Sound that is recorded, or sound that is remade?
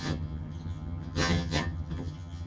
remade